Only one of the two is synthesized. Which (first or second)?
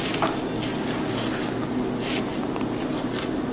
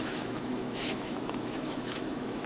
second